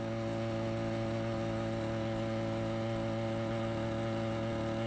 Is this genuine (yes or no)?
yes